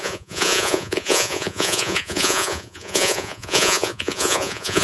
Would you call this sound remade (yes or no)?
yes